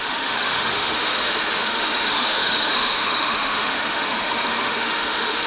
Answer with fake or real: fake